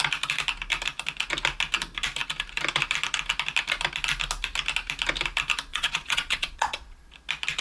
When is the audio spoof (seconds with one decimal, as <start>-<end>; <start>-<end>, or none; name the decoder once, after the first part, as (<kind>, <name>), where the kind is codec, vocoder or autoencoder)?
5.7-7.1 (vocoder, Vocos)